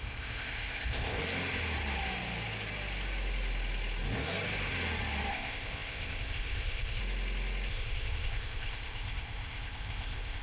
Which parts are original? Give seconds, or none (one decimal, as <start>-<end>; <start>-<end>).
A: 1.2-5.3; 7.0-7.7